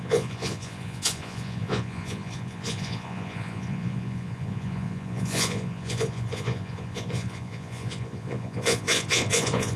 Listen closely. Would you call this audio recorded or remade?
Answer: remade